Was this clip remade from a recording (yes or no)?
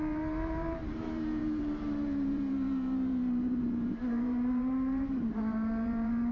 yes